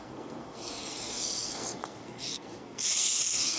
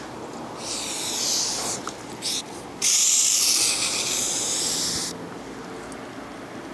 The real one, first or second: second